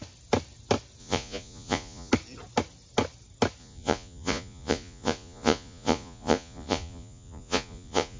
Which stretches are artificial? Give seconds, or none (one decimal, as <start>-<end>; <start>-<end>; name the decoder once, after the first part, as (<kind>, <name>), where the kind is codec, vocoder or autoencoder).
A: 1.0-2.1 (vocoder, Vocos); 3.6-8.2

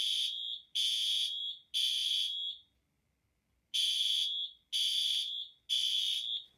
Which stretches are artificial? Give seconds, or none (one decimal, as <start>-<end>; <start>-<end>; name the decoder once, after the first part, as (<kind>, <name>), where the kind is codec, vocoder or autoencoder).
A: 0.8-1.4 (vocoder, Vocos)

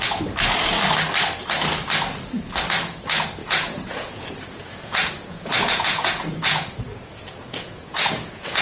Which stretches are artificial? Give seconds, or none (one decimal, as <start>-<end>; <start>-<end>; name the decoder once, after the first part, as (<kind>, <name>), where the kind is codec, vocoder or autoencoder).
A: 3.4-8.6 (vocoder, Vocos)